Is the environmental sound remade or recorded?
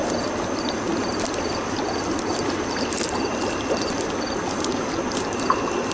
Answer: recorded